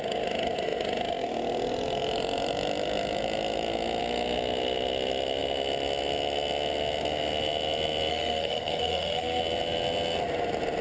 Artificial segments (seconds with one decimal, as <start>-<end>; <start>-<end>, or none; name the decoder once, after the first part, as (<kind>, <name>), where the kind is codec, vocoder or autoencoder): 8.1-9.4 (codec, SNAC)